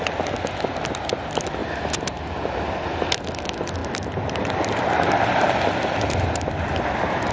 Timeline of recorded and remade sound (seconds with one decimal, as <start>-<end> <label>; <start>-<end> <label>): 0.0-3.8 recorded; 3.8-6.3 remade; 6.3-7.3 recorded